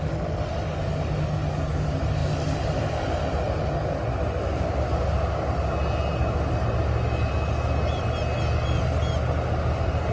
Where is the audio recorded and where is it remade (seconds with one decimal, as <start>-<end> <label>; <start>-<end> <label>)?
0.0-10.1 recorded